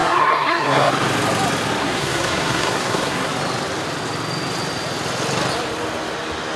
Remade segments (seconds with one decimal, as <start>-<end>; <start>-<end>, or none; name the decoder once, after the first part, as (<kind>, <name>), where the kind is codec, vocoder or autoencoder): 0.0-0.9 (codec, SNAC); 1.8-3.3